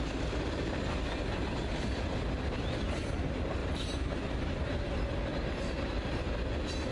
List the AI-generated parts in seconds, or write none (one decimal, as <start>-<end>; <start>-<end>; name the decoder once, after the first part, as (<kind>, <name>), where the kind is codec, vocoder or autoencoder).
3.6-4.4 (vocoder, BigVGAN v2); 5.3-6.2